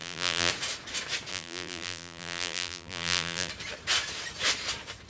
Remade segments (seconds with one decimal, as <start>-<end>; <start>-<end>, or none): 0.0-0.5; 1.3-3.5